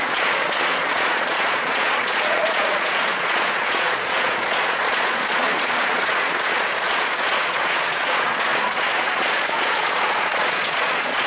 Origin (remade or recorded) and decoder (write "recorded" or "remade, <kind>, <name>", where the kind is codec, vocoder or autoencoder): remade, vocoder, Vocos